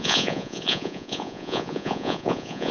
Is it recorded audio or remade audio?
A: remade